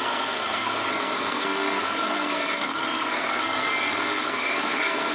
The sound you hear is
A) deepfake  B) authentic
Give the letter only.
A